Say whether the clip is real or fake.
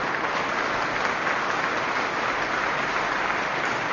real